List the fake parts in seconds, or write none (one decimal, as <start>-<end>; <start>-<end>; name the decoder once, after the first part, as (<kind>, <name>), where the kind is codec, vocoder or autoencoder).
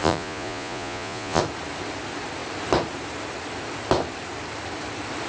0.0-1.4 (vocoder, Vocos)